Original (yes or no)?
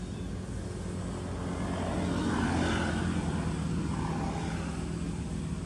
yes